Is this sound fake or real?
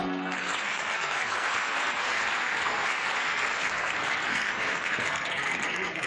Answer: fake